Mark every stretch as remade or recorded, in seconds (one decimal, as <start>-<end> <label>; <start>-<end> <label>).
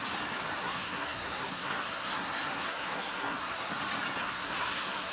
0.0-0.6 recorded; 0.6-3.7 remade; 3.7-4.2 recorded; 4.2-5.1 remade